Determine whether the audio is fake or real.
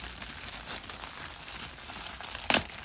real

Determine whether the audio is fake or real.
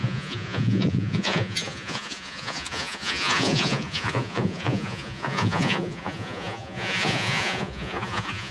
fake